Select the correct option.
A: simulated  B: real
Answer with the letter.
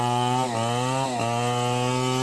B